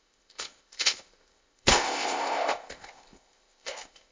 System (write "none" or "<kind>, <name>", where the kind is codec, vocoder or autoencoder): codec, ZipCodec